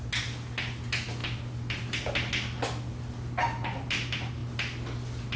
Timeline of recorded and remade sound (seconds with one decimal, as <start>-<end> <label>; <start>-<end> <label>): 0.0-5.4 recorded